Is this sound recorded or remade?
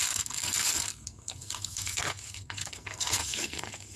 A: remade